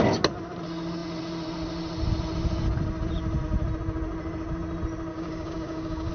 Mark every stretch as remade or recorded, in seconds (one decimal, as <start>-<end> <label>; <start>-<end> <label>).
0.0-5.1 recorded; 5.1-6.1 remade